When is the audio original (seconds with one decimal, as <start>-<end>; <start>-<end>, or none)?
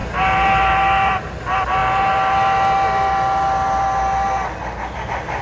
0.0-5.4